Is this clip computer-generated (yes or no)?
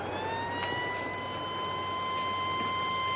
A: no